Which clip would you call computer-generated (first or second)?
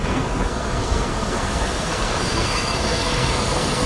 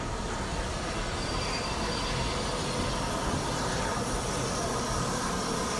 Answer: first